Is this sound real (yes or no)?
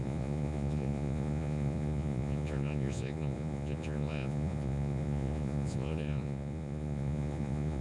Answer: no